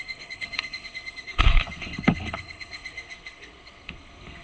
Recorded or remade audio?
remade